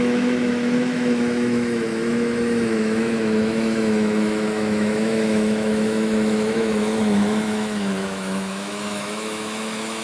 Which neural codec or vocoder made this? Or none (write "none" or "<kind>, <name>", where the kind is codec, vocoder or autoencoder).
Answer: autoencoder, DAC-VAE